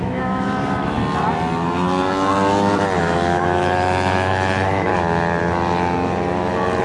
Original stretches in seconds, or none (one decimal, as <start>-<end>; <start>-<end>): 1.0-3.0; 4.9-6.8